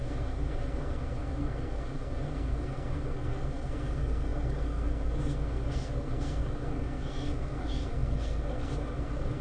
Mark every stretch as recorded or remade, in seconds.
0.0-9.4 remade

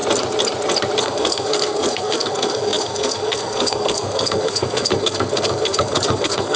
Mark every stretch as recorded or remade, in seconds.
0.0-1.0 recorded; 1.0-6.6 remade

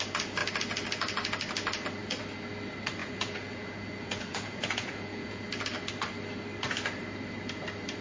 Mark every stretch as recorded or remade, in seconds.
0.0-3.0 recorded; 3.0-5.4 remade; 5.4-8.0 recorded

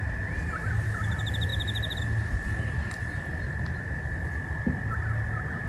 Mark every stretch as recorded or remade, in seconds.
0.0-5.7 recorded